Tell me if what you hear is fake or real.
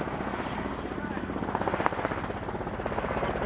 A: real